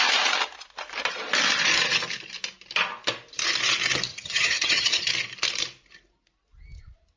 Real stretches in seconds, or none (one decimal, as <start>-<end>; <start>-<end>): 0.0-4.1; 5.1-7.2